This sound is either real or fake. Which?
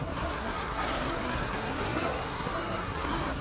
fake